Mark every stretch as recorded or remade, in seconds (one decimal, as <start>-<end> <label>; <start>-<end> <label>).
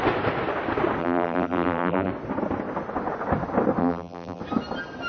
0.0-1.0 recorded; 1.0-2.1 remade; 2.1-3.8 recorded; 3.8-4.4 remade; 4.4-5.1 recorded